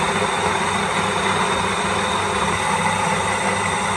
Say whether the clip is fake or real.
real